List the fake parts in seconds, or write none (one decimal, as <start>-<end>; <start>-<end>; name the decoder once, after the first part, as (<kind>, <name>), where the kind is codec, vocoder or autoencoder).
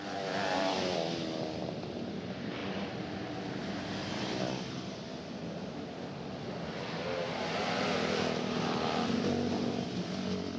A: none